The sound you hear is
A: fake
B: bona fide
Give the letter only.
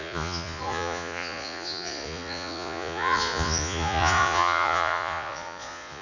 A